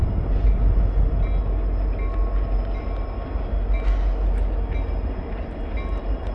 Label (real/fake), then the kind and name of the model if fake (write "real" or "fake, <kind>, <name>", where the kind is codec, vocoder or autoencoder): real